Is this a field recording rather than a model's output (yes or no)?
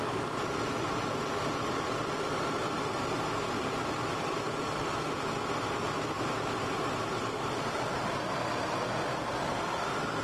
yes